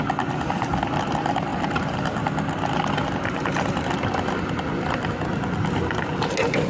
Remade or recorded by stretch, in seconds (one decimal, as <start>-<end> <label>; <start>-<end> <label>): 0.0-6.7 recorded